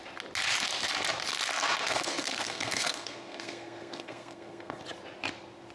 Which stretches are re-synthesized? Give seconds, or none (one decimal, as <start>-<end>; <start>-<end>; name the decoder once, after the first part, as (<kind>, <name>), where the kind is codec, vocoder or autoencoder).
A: 1.8-4.8 (codec, SNAC)